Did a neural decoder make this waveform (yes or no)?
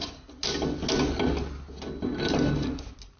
no